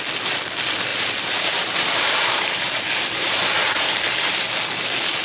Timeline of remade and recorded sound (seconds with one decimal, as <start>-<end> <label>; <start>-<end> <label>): 0.0-0.9 recorded; 0.9-4.0 remade; 4.0-5.2 recorded

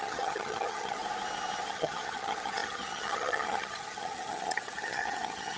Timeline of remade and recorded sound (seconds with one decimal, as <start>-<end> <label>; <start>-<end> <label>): 0.0-1.0 remade; 1.0-1.7 recorded; 1.7-5.6 remade

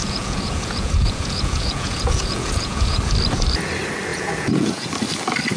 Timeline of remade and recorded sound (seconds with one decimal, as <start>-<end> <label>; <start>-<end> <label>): 0.0-3.0 remade; 3.0-4.1 recorded; 4.1-4.9 remade; 4.9-5.6 recorded